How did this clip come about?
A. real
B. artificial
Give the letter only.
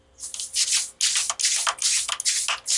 A